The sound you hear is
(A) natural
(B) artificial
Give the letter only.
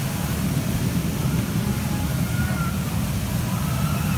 A